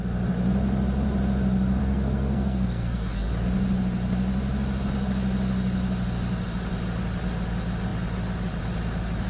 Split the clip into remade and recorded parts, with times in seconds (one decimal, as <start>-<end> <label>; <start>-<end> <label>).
0.0-1.8 recorded; 1.8-3.3 remade; 3.3-9.3 recorded